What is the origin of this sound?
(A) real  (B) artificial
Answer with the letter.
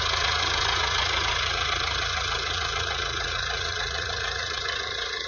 B